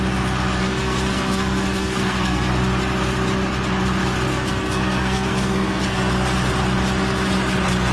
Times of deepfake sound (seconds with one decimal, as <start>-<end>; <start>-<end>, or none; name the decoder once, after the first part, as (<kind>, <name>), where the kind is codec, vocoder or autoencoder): 0.6-2.5 (codec, SNAC); 4.3-6.1